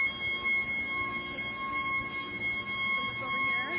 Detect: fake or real real